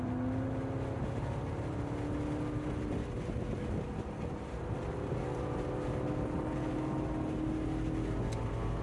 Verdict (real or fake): real